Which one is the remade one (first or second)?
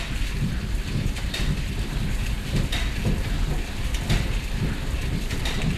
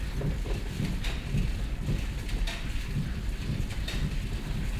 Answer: first